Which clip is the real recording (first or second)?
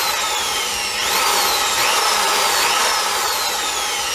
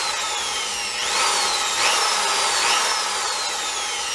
second